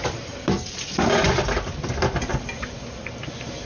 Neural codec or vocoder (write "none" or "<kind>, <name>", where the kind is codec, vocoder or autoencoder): none